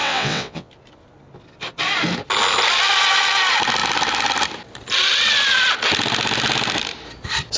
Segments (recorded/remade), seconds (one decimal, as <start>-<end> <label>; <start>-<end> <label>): 0.0-0.7 remade; 0.7-7.6 recorded